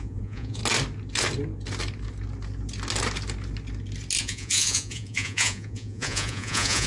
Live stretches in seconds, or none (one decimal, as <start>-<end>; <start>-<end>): 0.6-4.2